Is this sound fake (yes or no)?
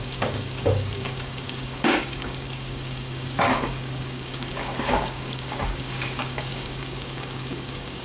yes